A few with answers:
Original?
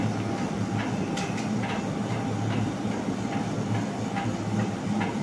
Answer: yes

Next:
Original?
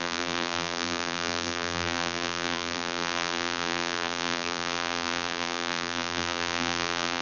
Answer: no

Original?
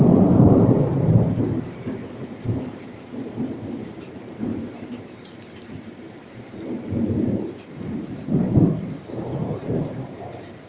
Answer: no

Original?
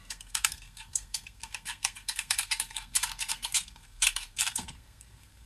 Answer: no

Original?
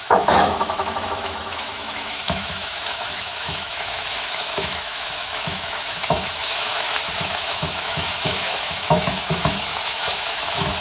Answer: no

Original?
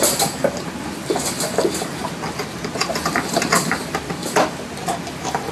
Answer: yes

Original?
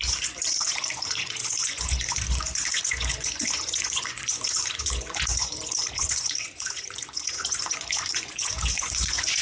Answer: no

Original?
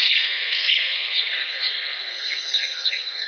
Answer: no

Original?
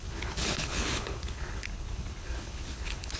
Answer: no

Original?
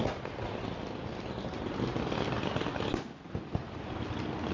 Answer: yes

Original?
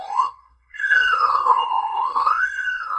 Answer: no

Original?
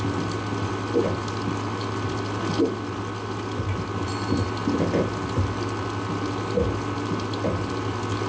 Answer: yes